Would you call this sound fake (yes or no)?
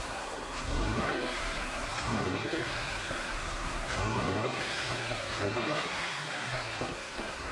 yes